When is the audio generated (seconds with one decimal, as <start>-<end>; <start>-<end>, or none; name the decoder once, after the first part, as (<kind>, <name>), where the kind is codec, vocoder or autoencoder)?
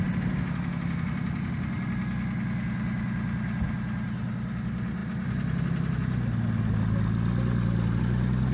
none